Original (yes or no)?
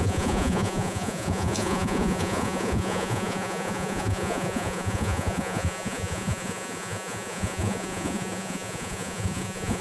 no